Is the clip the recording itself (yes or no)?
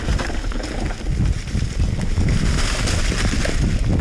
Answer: yes